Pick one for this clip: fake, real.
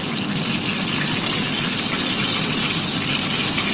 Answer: real